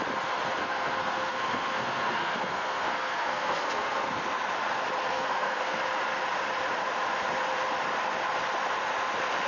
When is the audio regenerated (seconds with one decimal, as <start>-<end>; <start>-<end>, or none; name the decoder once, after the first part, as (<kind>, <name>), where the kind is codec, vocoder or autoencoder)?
0.6-4.1 (codec, SNAC); 5.1-5.8